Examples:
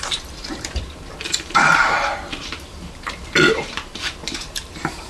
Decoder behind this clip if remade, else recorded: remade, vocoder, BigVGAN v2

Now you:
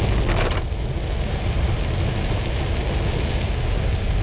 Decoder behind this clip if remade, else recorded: recorded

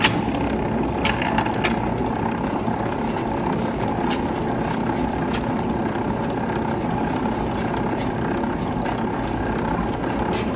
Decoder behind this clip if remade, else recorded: recorded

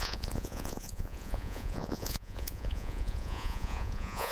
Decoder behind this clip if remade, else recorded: remade, vocoder, Vocos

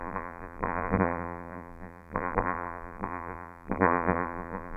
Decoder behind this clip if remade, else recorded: remade, vocoder, BigVGAN v2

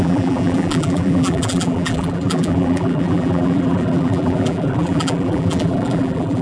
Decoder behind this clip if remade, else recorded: remade, vocoder, BigVGAN v2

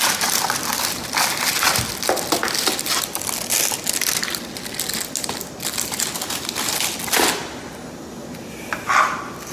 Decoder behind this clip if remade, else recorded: recorded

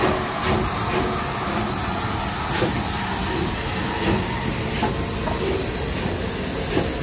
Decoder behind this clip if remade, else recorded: recorded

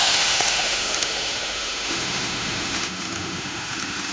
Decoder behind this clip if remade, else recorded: remade, autoencoder, DAC-VAE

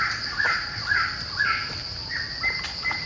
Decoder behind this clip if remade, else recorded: recorded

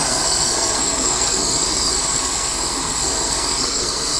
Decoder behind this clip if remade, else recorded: remade, codec, SNAC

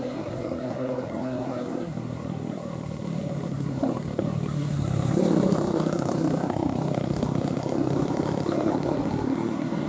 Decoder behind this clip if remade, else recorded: remade, codec, SNAC